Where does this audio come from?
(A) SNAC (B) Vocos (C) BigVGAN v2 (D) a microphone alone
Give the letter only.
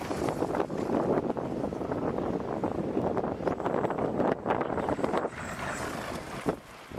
D